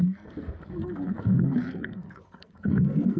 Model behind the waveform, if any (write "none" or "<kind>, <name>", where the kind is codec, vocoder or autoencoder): codec, SNAC